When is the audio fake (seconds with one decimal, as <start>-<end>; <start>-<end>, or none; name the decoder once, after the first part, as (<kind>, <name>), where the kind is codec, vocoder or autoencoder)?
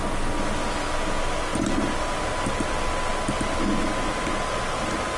none